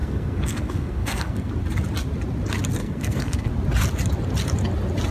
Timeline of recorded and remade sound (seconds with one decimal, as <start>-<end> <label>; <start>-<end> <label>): 0.0-1.5 remade; 1.5-2.8 recorded; 2.8-3.5 remade; 3.5-5.1 recorded